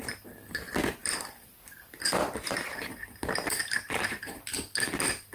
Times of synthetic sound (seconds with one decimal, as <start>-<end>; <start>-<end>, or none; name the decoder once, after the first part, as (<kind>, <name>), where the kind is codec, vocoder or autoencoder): 1.0-4.2 (vocoder, BigVGAN v2)